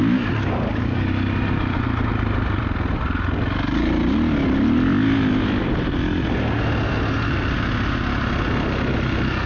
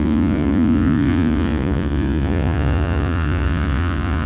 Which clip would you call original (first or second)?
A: first